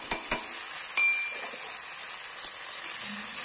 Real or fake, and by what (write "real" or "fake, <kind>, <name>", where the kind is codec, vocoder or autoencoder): real